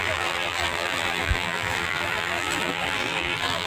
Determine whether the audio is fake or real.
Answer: fake